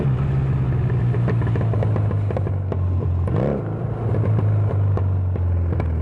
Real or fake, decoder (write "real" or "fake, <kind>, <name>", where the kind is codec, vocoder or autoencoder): real